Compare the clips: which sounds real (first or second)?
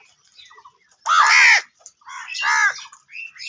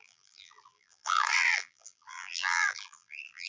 first